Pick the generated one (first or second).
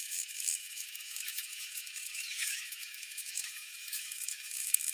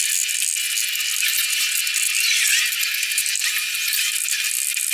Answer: first